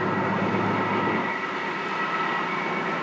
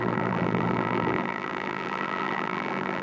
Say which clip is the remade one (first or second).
second